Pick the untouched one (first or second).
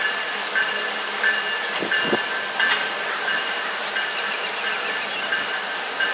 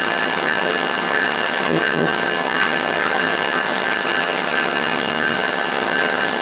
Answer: first